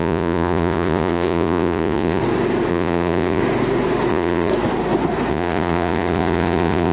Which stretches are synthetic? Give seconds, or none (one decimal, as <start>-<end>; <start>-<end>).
0.0-2.2; 2.7-3.4; 4.1-4.5; 5.3-6.9